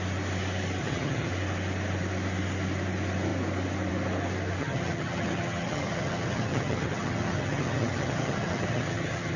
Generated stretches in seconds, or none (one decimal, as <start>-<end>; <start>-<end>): 0.8-1.3; 4.6-9.4